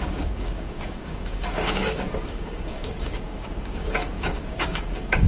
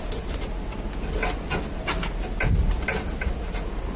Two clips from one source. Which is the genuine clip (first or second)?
second